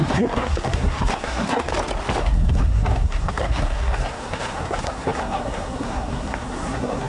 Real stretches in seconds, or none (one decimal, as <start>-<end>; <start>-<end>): 1.7-2.2